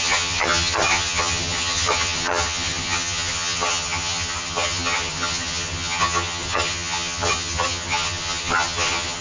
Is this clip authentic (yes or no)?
no